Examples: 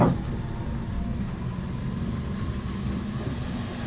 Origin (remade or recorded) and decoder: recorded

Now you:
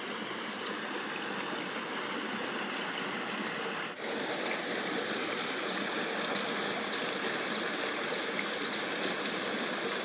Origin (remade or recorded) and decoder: recorded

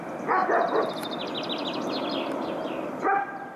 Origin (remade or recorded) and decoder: recorded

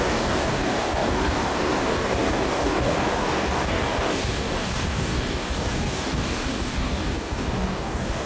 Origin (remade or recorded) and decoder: remade, codec, DAC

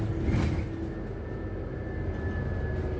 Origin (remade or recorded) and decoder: recorded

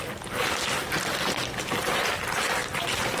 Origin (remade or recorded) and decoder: recorded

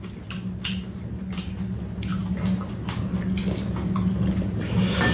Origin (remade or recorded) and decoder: recorded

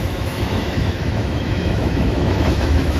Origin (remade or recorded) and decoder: remade, autoencoder, DAC-VAE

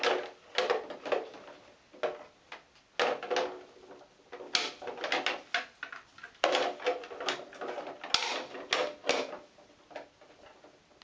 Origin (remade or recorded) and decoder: recorded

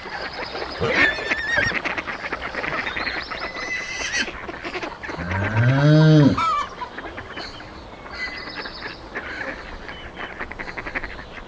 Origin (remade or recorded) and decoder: recorded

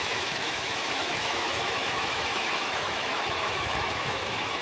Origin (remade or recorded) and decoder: remade, autoencoder, DAC-VAE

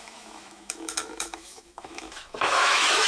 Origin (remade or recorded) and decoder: remade, autoencoder, DAC-VAE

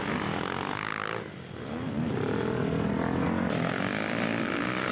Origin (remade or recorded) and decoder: recorded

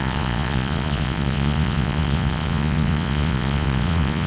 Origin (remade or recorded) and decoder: remade, vocoder, Vocos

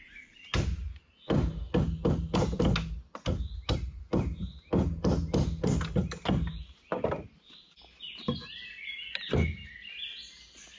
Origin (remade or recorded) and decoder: recorded